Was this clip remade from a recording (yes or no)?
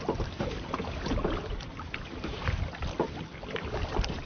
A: no